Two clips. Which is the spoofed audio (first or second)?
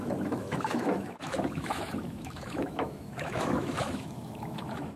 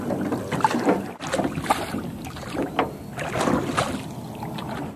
first